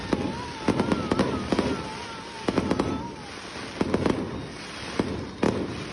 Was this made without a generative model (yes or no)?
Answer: yes